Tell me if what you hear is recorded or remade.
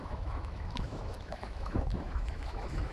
remade